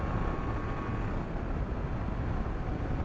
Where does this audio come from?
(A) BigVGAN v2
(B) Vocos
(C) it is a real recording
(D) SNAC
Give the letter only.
C